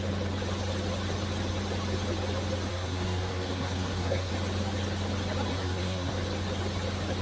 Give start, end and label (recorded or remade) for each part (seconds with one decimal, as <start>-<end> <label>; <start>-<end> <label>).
0.0-2.7 recorded; 2.7-4.3 remade; 4.3-5.5 recorded; 5.5-6.1 remade; 6.1-7.2 recorded